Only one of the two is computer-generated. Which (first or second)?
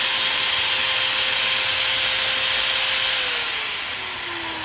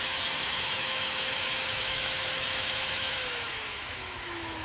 second